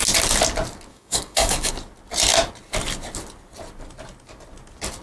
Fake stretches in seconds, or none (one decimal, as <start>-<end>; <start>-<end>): 0.9-1.7